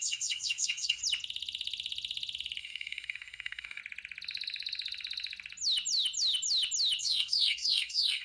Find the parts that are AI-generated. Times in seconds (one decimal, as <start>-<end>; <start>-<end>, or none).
0.0-1.0; 2.6-3.8; 7.0-8.2